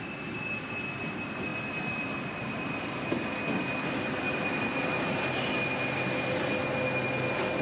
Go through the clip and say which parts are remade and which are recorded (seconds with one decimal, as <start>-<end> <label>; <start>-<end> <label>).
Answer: 0.0-7.6 recorded